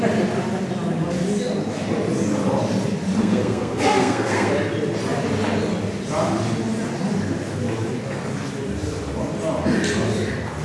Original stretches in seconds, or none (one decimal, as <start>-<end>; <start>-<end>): 0.0-3.2; 4.5-10.6